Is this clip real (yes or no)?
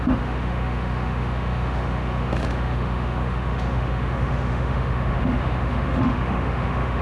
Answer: no